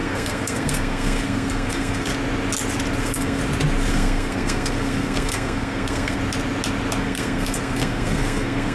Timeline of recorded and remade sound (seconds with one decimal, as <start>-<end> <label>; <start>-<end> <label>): 0.0-2.1 remade; 2.1-3.0 recorded; 3.0-3.4 remade; 3.4-3.9 recorded; 3.9-6.2 remade; 6.2-7.0 recorded; 7.0-8.7 remade